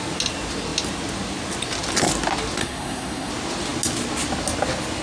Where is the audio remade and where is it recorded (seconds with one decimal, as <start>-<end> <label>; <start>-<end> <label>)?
0.0-2.6 recorded; 2.6-3.3 remade; 3.3-5.0 recorded

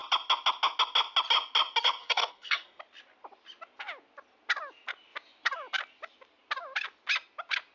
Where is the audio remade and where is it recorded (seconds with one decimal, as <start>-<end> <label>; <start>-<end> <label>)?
0.0-2.0 recorded; 2.0-2.8 remade; 2.8-7.7 recorded